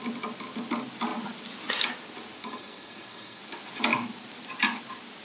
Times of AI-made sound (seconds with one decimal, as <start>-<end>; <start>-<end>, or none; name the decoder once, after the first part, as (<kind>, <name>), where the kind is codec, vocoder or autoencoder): 2.4-3.4 (codec, SNAC)